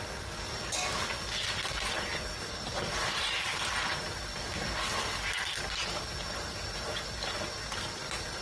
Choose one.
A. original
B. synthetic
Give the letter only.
A